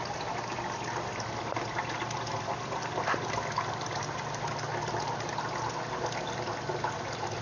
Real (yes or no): no